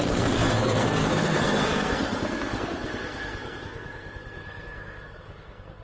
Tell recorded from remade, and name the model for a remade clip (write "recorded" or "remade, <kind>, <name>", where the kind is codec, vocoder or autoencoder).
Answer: remade, codec, SNAC